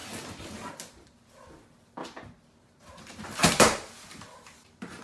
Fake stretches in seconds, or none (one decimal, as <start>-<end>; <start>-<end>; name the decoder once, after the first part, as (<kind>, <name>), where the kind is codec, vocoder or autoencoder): 3.4-5.0 (vocoder, BigVGAN v2)